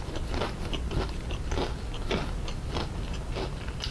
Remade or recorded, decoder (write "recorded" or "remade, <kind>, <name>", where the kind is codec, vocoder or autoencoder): recorded